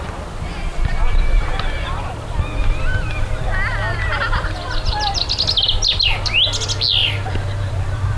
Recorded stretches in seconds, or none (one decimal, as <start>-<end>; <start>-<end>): 0.0-0.7; 1.5-2.6; 3.5-7.0

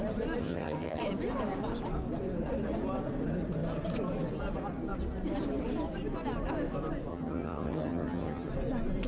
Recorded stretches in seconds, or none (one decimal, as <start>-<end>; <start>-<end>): 0.0-0.4; 1.0-7.1; 8.5-9.1

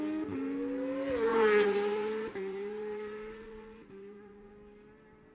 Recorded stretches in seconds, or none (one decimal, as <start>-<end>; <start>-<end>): 0.0-1.3; 4.5-5.3

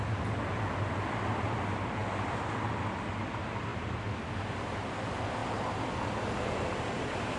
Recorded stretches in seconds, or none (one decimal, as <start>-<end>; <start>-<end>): 0.0-7.4

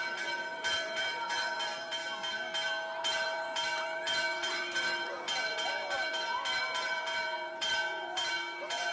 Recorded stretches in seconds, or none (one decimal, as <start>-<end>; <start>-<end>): 2.0-3.0

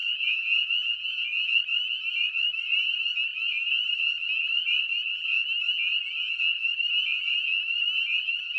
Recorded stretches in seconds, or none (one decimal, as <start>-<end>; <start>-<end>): 1.5-8.6